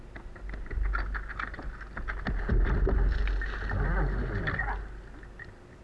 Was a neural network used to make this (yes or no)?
no